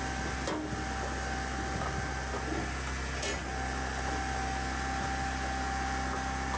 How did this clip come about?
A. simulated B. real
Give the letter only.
B